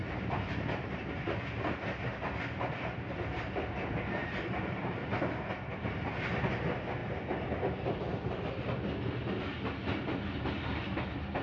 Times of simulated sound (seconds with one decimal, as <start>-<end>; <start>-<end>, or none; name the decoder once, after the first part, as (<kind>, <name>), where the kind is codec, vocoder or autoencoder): 4.2-5.5 (vocoder, BigVGAN v2)